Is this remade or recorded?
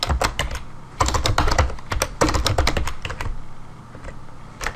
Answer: recorded